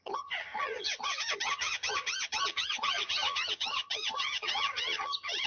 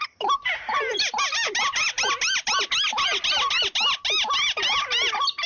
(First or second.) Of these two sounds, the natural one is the second